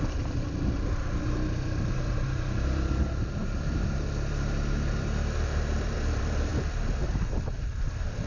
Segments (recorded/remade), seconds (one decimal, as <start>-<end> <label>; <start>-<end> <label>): 0.0-6.5 remade; 6.5-7.0 recorded; 7.0-8.3 remade